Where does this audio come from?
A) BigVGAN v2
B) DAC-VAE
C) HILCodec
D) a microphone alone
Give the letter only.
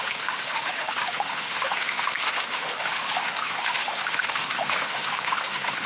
B